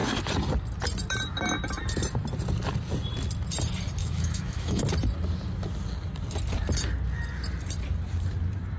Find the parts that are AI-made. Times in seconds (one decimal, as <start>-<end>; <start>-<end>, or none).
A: 4.0-4.8